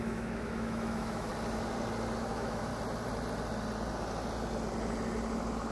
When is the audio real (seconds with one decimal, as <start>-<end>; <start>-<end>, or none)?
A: 1.3-2.2; 2.7-5.7